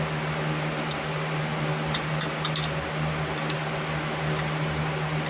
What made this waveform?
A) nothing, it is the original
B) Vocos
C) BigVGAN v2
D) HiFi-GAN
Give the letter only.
A